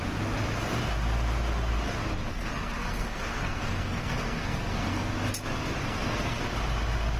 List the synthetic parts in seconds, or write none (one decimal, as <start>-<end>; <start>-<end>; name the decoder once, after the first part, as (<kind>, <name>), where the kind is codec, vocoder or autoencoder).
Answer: 2.3-5.1 (codec, SNAC); 5.8-6.4